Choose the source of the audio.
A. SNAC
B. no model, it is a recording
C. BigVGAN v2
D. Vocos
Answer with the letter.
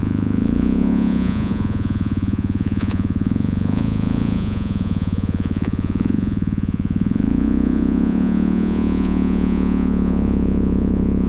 D